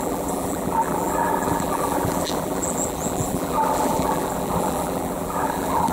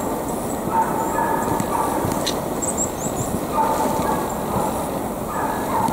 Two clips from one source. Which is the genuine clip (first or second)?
second